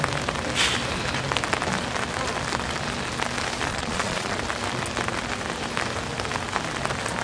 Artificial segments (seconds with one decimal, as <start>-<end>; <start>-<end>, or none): 3.7-4.4